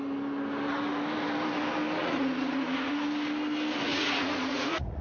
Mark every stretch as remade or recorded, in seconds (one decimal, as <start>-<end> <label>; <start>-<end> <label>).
0.0-2.0 recorded; 2.0-2.9 remade; 2.9-3.9 recorded; 3.9-5.0 remade